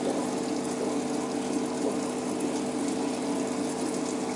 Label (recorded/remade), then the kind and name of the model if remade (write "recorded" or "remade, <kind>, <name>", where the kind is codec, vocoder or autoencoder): recorded